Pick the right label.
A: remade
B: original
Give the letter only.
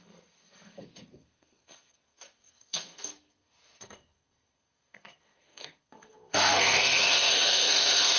A